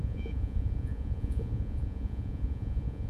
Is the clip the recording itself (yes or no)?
no